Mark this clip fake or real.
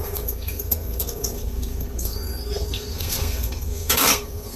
fake